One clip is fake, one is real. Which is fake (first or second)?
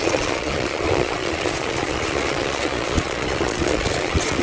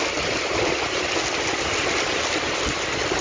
first